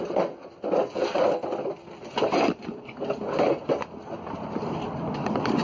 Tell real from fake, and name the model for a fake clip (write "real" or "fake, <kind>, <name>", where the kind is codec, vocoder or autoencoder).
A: real